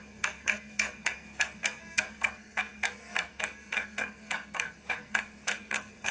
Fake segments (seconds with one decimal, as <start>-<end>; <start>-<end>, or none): 0.0-6.1